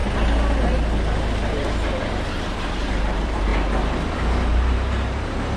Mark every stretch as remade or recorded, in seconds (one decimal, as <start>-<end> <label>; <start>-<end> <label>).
0.0-2.4 recorded; 2.4-3.5 remade; 3.5-4.5 recorded; 4.5-5.6 remade